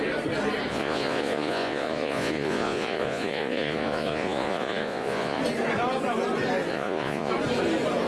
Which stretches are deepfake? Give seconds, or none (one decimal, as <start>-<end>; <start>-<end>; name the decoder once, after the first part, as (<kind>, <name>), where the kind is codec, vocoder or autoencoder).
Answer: 0.7-5.4 (vocoder, Vocos); 6.7-7.3